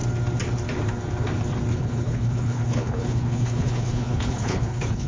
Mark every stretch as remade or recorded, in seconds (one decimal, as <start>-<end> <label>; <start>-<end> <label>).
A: 0.0-1.7 recorded; 1.7-5.1 remade